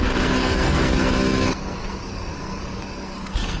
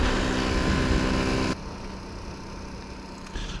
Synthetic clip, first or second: first